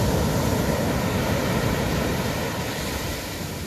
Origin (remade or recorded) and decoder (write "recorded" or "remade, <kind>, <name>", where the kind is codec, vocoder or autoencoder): recorded